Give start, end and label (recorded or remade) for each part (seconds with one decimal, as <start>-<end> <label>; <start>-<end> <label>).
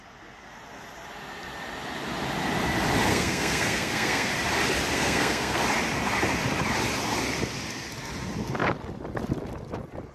0.0-3.1 recorded; 3.1-4.3 remade; 4.3-4.9 recorded; 4.9-5.6 remade; 5.6-10.1 recorded